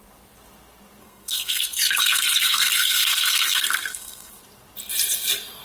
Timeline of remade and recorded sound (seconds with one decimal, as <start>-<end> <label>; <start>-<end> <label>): 0.0-1.0 recorded; 1.0-4.4 remade; 4.4-5.6 recorded